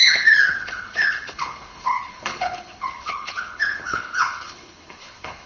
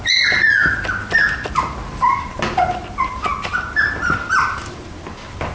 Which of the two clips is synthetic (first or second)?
first